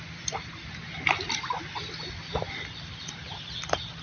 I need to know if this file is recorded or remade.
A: recorded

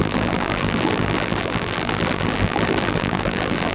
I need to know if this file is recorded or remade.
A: remade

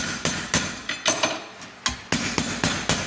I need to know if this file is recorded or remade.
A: recorded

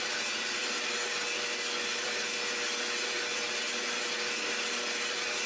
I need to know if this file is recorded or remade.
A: recorded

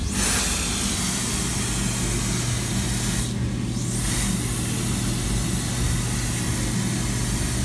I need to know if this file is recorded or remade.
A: recorded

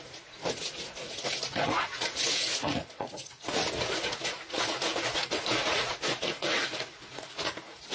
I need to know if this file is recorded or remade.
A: remade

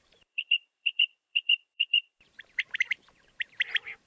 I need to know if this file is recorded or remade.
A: remade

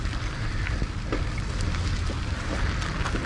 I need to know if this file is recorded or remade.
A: recorded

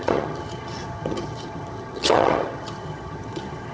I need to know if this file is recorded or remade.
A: remade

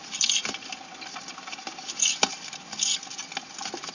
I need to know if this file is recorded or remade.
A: recorded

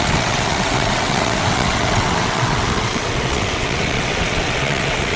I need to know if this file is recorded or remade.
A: remade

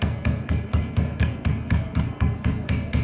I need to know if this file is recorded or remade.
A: remade